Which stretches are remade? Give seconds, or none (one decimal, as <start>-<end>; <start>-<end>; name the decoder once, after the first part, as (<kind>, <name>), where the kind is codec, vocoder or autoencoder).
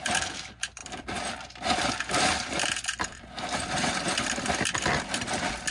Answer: none